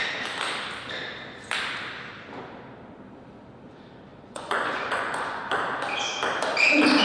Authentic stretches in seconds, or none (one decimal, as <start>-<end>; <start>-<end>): 0.0-4.1; 5.4-7.0